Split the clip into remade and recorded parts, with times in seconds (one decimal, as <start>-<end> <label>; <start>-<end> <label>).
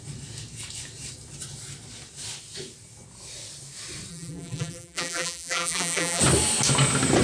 0.0-4.1 recorded; 4.1-6.2 remade; 6.2-7.2 recorded